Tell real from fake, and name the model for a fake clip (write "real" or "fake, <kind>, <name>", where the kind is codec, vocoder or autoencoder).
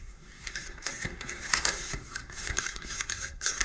fake, codec, SNAC